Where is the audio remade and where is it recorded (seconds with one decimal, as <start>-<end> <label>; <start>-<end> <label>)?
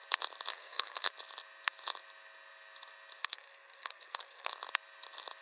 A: 0.0-0.5 recorded; 0.5-1.1 remade; 1.1-3.2 recorded; 3.2-4.5 remade; 4.5-5.4 recorded